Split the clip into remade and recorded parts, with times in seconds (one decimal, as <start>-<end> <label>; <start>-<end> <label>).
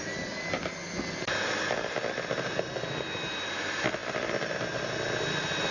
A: 0.0-5.7 recorded